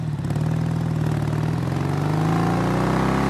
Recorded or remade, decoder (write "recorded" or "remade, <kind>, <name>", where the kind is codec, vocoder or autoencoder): recorded